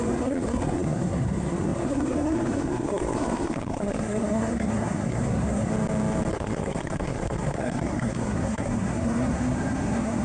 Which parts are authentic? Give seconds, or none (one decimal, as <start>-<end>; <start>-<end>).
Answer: 5.7-6.3